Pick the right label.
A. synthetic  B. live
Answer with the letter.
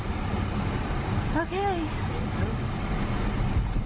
B